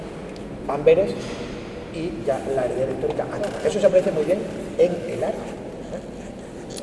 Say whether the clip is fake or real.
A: real